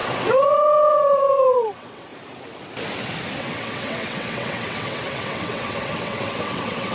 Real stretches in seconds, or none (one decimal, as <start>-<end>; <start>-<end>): 2.1-3.4